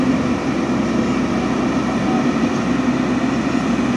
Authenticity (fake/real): real